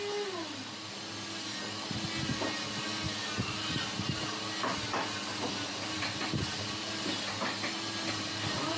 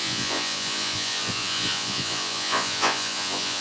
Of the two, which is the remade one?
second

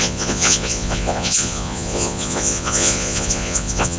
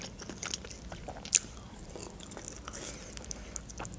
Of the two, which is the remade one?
first